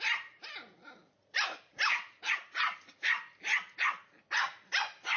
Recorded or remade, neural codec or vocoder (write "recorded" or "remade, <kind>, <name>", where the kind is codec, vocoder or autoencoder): recorded